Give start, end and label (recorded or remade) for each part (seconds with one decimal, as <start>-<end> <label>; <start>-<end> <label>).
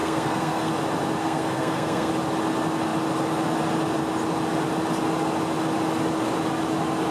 0.0-0.7 remade; 0.7-1.2 recorded; 1.2-2.1 remade; 2.1-7.1 recorded